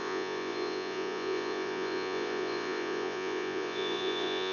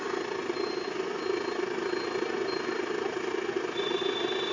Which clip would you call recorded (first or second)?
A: second